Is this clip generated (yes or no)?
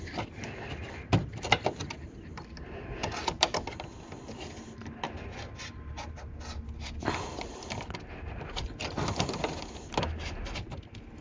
no